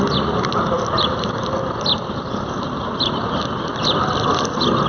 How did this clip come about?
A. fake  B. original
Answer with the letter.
B